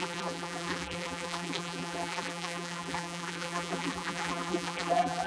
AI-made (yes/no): yes